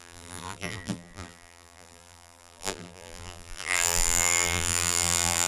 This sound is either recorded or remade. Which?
remade